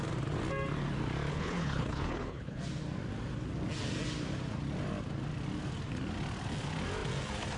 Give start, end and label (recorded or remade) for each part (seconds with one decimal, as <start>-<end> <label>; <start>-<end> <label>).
0.0-1.3 recorded; 1.3-2.6 remade; 2.6-7.6 recorded